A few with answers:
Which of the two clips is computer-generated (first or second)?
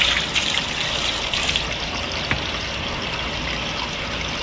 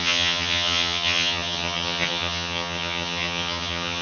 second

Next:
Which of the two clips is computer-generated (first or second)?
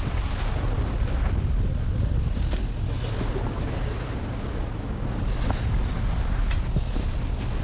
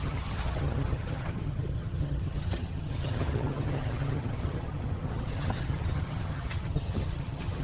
second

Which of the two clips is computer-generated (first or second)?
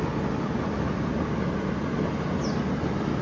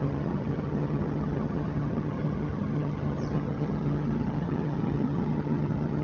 second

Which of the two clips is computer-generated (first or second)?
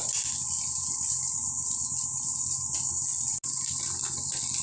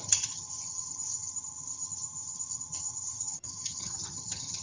second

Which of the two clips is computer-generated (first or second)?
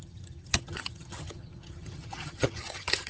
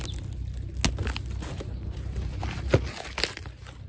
first